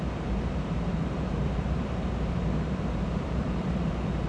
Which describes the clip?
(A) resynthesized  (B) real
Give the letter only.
A